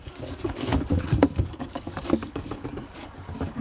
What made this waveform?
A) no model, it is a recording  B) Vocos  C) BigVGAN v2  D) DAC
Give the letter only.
D